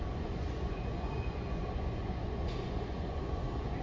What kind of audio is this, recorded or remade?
remade